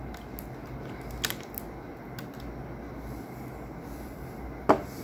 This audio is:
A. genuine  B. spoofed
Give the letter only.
A